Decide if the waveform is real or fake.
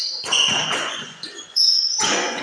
fake